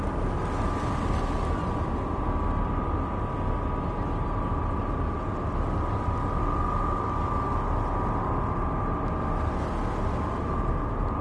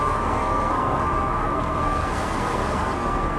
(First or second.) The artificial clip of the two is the second